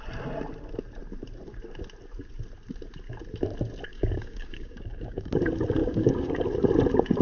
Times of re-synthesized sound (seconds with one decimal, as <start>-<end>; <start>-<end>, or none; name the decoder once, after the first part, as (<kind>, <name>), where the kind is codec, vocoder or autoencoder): 3.9-5.3 (codec, DAC); 5.8-6.3